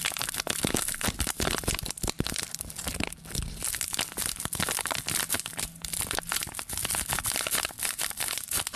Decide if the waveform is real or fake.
real